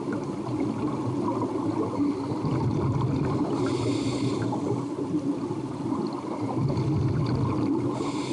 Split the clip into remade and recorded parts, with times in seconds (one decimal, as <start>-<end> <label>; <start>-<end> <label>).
0.0-2.5 recorded; 2.5-6.4 remade; 6.4-8.3 recorded